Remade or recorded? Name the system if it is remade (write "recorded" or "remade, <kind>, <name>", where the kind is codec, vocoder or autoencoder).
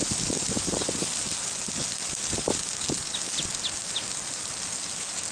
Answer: recorded